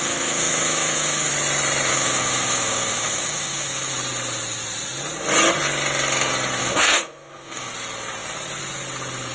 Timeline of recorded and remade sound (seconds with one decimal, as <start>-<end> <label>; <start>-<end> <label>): 0.0-1.3 remade; 1.3-1.9 recorded; 1.9-3.9 remade; 3.9-6.6 recorded; 6.6-7.7 remade; 7.7-9.3 recorded